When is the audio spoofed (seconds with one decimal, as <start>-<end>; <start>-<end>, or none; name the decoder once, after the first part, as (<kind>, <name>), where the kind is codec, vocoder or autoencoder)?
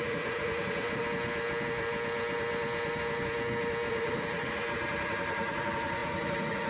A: 0.0-1.0 (vocoder, Vocos); 3.9-6.7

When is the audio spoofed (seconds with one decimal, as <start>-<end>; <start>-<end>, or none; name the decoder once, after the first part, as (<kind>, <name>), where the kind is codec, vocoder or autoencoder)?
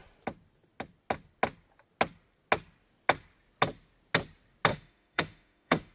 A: 4.7-5.9 (autoencoder, DAC-VAE)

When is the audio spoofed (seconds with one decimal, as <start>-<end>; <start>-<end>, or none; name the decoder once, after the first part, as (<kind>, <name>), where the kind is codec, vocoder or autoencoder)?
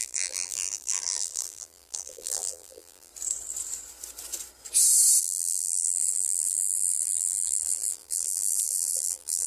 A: 0.0-3.1 (vocoder, BigVGAN v2); 5.2-9.5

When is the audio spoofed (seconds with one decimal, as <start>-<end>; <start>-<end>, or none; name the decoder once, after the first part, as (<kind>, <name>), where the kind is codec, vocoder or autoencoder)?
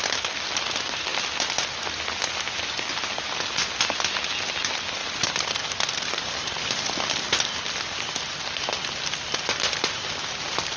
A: 5.0-7.2 (vocoder, BigVGAN v2)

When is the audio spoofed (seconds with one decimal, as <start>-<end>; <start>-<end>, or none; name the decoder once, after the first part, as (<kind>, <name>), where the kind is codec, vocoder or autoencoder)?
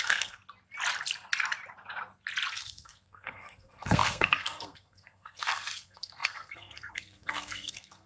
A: 0.0-0.4 (codec, SNAC); 2.5-8.1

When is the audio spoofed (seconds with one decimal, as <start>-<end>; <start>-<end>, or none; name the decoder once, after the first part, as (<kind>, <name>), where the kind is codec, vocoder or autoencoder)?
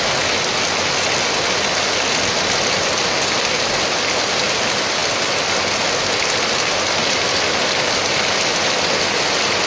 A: none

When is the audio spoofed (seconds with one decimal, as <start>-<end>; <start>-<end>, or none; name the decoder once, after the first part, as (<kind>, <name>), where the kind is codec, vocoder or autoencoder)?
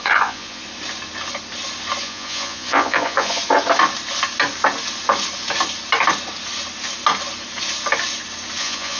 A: 0.0-0.6 (vocoder, Vocos); 2.0-3.4; 8.6-9.0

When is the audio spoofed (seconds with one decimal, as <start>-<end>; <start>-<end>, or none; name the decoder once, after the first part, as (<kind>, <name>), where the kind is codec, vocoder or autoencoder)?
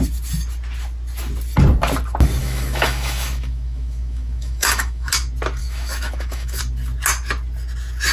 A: 2.4-5.1 (autoencoder, DAC-VAE); 5.6-6.6